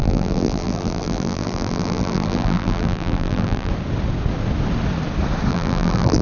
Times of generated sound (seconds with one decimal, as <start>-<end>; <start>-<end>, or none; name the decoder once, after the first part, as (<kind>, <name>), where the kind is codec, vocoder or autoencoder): 0.0-3.7 (vocoder, BigVGAN v2); 5.5-6.2